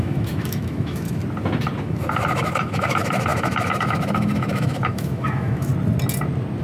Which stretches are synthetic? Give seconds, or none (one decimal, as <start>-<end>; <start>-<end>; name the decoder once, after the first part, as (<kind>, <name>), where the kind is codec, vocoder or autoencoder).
0.0-1.2 (autoencoder, DAC-VAE); 1.8-5.7